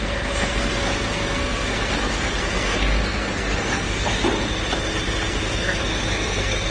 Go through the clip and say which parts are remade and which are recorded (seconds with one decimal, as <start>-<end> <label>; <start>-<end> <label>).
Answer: 0.0-4.1 remade; 4.1-5.3 recorded; 5.3-6.7 remade